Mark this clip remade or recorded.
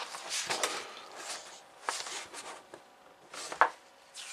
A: recorded